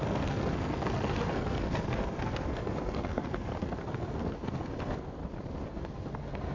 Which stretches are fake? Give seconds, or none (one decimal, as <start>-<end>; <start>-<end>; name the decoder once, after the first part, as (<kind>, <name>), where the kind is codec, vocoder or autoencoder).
0.0-5.2 (codec, SNAC); 5.7-6.5